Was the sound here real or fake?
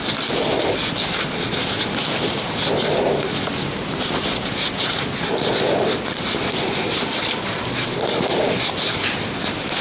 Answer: real